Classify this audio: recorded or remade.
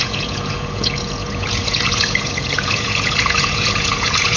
remade